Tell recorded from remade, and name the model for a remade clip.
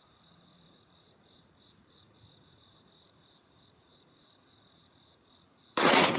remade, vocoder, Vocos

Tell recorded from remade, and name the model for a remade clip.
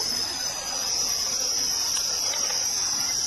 recorded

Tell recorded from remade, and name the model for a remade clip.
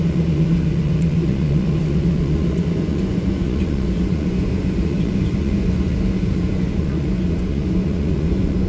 remade, vocoder, Vocos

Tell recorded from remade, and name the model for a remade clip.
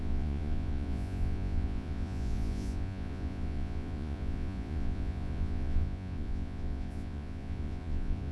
remade, vocoder, Vocos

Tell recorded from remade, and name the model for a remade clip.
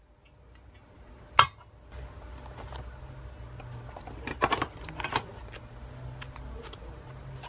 recorded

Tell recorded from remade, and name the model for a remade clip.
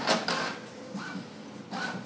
recorded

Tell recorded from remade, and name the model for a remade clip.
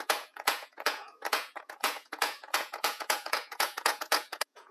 remade, vocoder, Vocos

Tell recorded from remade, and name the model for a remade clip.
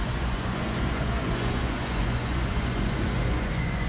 remade, vocoder, Vocos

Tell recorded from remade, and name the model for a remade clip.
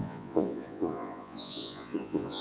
remade, vocoder, Vocos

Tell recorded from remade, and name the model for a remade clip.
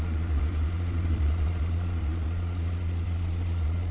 remade, vocoder, Vocos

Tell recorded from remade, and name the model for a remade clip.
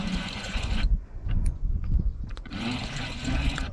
remade, vocoder, Vocos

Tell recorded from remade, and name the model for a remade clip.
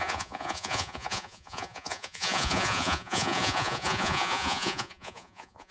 remade, vocoder, Vocos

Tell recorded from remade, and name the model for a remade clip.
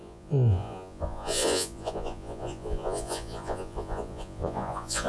remade, vocoder, Vocos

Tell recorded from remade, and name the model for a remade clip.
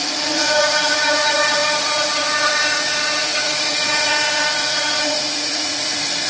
remade, vocoder, Vocos